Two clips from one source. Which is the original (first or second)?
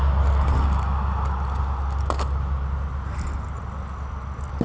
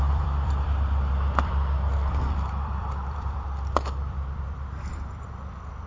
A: first